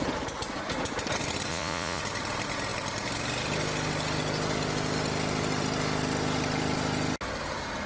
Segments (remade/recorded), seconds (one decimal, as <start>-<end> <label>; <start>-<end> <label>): 0.0-1.5 recorded; 1.5-2.0 remade; 2.0-7.9 recorded

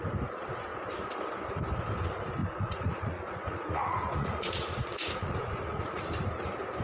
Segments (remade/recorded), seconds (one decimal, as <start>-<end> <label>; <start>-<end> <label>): 0.0-2.4 recorded; 2.4-6.0 remade; 6.0-6.8 recorded